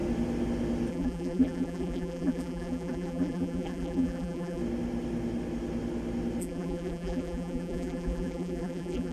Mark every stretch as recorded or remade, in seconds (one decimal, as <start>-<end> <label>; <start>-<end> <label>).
0.0-0.9 recorded; 0.9-4.6 remade; 4.6-6.4 recorded; 6.4-9.1 remade